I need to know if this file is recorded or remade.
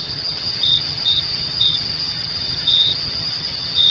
remade